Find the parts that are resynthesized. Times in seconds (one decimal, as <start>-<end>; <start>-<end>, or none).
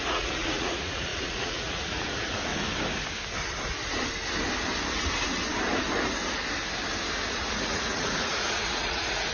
0.0-2.5; 7.3-9.3